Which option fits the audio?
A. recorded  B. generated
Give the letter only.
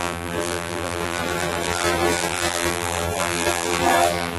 B